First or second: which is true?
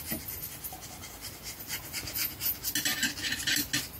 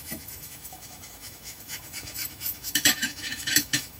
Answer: first